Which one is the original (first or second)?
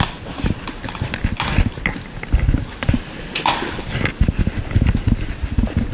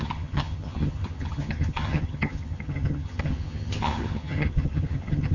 first